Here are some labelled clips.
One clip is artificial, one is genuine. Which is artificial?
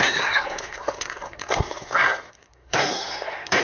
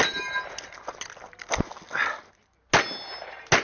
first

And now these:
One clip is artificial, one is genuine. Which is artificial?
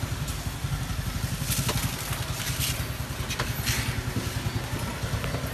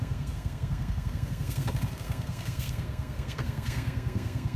second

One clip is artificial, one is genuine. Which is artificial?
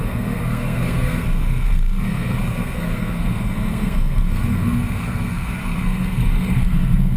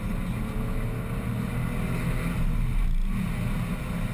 first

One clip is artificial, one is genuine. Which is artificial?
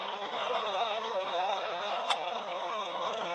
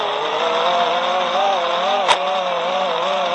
first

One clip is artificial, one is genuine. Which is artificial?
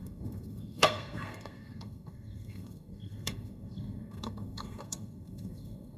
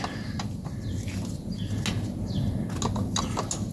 first